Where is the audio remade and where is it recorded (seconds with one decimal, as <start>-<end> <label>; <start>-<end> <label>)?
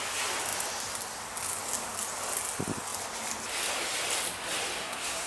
0.0-4.8 recorded; 4.8-5.3 remade